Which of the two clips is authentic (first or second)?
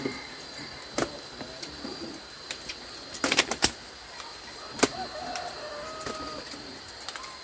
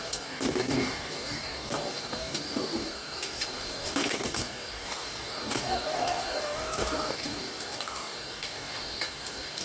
first